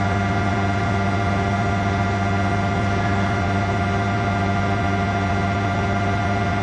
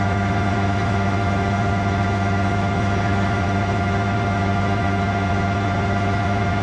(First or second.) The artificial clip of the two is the second